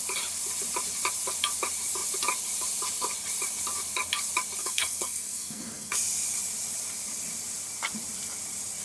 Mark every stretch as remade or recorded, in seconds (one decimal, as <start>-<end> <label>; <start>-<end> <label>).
0.0-4.6 recorded; 4.6-5.9 remade; 5.9-8.8 recorded